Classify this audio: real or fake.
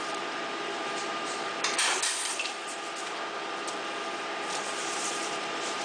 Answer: fake